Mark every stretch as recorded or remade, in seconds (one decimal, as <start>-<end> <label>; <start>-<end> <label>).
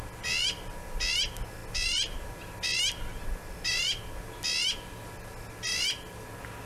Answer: 0.0-6.7 recorded